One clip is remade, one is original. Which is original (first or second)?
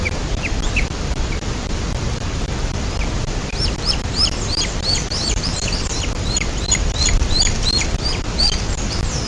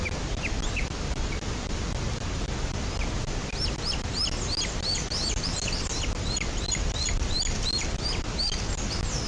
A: second